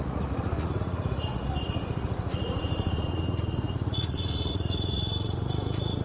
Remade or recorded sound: remade